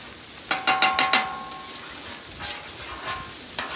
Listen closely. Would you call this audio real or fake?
real